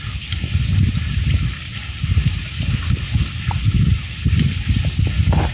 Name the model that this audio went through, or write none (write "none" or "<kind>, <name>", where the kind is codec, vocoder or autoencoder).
none